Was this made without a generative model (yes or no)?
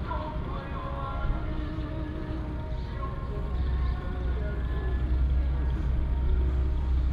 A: yes